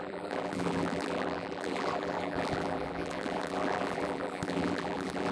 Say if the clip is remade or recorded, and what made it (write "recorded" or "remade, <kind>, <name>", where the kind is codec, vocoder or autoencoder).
remade, vocoder, BigVGAN v2